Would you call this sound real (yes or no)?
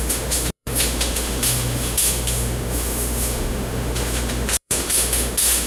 no